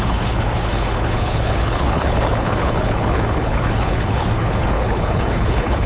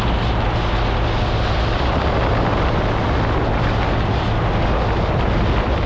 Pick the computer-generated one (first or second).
first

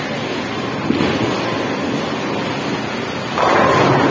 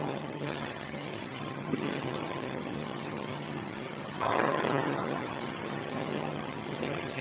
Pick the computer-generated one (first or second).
second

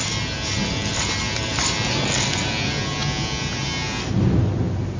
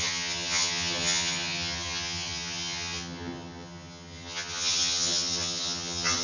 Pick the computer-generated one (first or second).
second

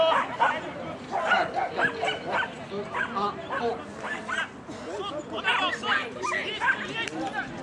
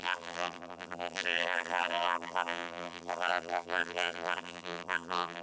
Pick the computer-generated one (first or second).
second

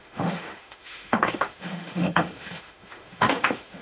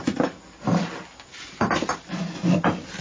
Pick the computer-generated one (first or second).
first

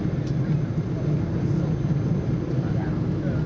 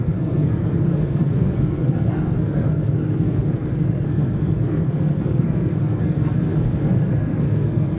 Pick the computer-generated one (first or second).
second